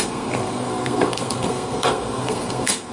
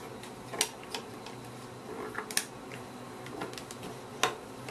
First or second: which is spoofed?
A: first